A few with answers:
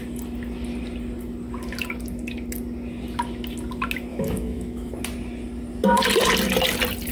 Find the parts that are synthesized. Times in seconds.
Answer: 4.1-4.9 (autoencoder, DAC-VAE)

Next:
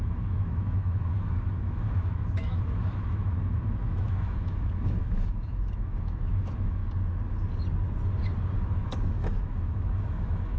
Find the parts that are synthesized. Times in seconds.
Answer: 0.0-6.8 (autoencoder, DAC-VAE); 8.6-10.6